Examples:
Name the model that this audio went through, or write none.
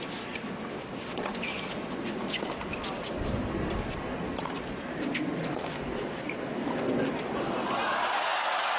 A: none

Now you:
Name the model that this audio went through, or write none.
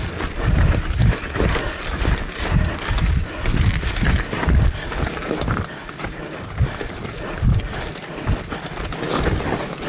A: none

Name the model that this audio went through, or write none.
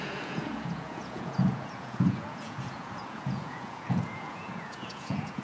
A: vocoder, Vocos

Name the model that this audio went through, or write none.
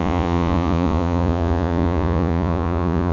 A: vocoder, Vocos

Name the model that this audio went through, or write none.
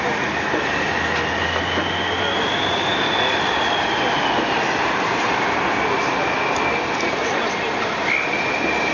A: none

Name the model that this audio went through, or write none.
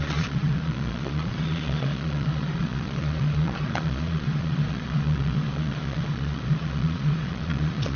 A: vocoder, Vocos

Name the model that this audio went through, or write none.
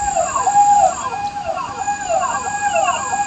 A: none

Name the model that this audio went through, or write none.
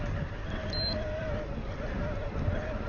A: none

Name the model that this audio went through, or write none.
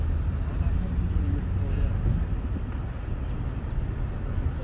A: none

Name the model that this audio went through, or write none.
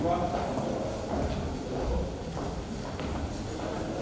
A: none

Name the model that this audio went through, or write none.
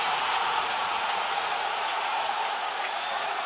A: vocoder, Vocos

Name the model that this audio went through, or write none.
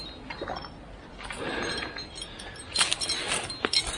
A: none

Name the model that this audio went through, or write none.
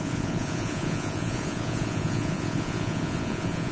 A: vocoder, Vocos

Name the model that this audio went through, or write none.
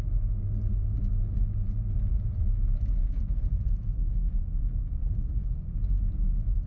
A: vocoder, Vocos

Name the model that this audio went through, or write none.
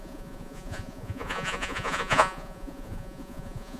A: vocoder, Vocos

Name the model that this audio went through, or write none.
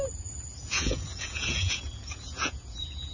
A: vocoder, Vocos